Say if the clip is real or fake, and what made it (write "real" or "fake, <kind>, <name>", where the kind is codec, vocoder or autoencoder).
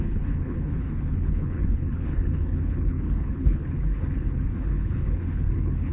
fake, codec, HILCodec